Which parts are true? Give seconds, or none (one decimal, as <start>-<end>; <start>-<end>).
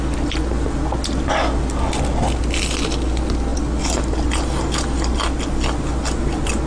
0.0-6.7